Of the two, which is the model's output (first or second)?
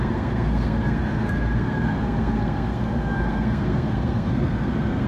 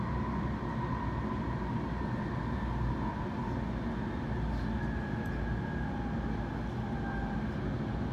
first